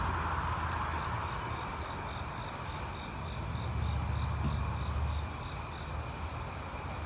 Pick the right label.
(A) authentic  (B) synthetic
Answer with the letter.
A